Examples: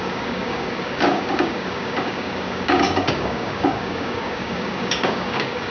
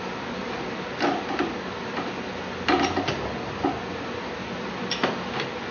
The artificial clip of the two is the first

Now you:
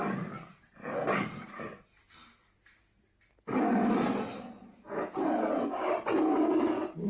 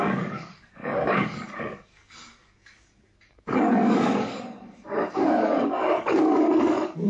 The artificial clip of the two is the second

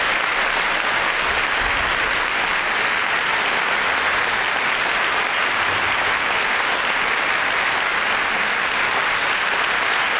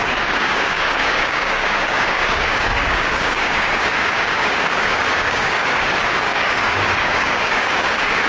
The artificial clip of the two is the second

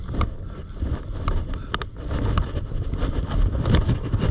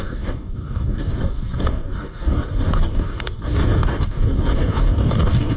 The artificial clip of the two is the second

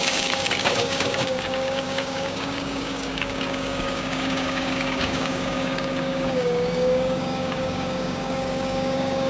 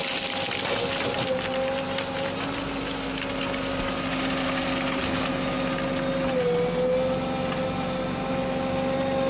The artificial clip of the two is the first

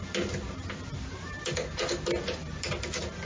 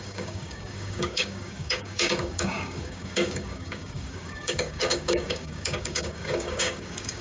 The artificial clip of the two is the second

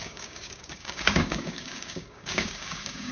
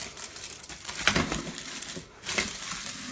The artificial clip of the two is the first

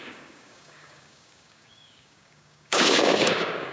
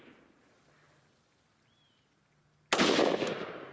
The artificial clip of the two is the first